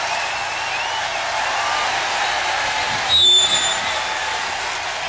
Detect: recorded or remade recorded